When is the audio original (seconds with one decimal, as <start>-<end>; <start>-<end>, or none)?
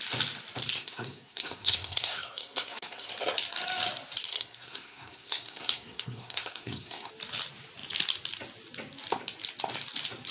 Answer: 0.0-0.7; 3.1-4.3; 7.1-10.3